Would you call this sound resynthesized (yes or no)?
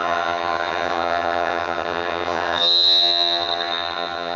yes